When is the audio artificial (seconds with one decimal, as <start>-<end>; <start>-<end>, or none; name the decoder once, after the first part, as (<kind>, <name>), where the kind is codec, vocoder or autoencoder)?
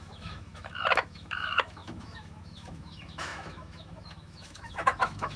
0.0-5.4 (autoencoder, DAC-VAE)